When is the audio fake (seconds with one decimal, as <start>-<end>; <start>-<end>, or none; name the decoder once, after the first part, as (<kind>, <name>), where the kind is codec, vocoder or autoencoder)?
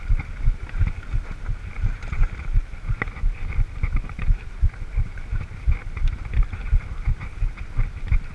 0.0-1.1 (vocoder, BigVGAN v2); 1.9-2.9